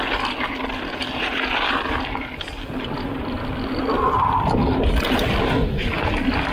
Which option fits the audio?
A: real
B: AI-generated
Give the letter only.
A